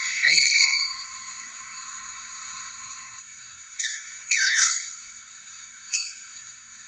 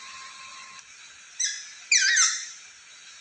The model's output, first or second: first